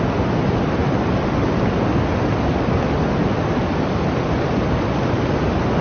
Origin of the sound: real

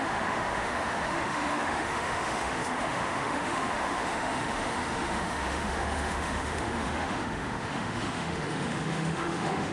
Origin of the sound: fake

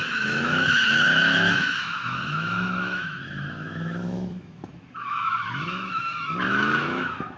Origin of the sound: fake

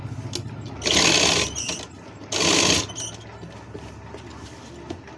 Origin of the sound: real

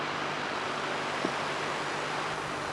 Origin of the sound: real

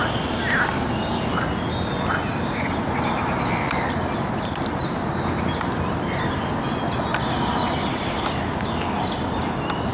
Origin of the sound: real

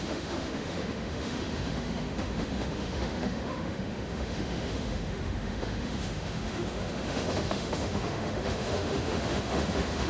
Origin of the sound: fake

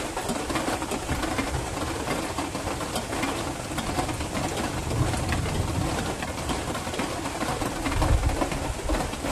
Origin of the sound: real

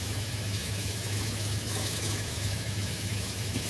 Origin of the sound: fake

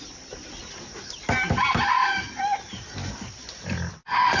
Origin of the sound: real